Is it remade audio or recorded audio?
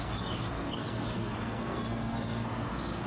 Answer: remade